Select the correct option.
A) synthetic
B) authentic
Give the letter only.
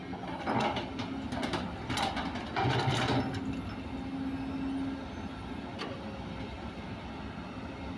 B